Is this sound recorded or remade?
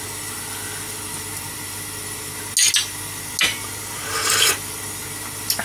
recorded